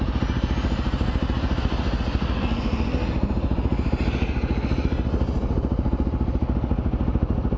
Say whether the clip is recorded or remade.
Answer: recorded